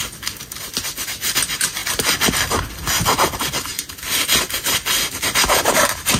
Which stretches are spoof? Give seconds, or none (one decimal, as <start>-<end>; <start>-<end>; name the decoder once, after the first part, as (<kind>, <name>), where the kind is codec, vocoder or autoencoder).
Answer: none